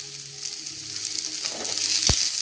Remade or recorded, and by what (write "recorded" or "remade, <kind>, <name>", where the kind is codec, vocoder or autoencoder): recorded